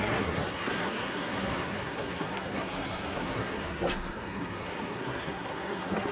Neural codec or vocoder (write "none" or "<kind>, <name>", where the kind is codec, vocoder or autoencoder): codec, SNAC